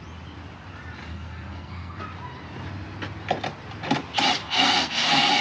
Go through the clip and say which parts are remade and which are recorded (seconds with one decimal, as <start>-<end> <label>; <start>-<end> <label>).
0.0-1.1 recorded; 1.1-2.0 remade; 2.0-4.4 recorded; 4.4-5.4 remade